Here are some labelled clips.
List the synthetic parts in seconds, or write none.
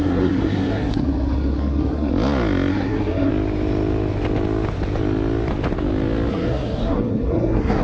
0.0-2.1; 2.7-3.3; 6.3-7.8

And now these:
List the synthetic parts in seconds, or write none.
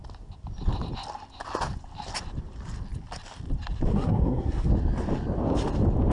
3.9-4.7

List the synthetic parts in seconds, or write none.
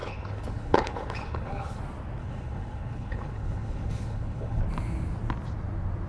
0.0-1.8; 2.2-4.6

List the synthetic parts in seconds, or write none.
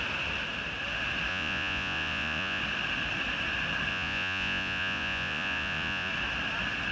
1.3-2.6; 3.9-6.1